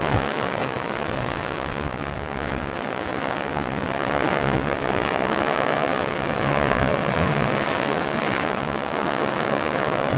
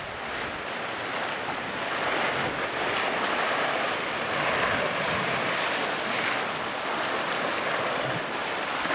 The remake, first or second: first